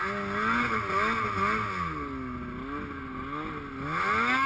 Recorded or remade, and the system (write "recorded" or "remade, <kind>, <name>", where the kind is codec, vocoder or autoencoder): recorded